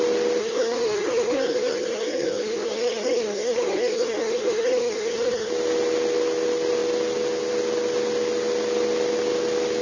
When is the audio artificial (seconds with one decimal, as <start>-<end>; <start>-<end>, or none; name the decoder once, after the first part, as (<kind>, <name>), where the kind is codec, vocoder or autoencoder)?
0.4-5.5 (codec, SNAC)